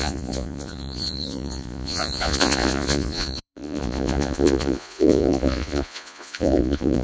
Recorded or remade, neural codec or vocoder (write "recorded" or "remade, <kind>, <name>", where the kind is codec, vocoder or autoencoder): remade, vocoder, Vocos